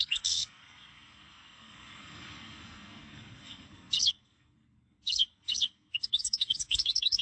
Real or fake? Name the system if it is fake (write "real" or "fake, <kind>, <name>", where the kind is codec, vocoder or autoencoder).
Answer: fake, codec, SNAC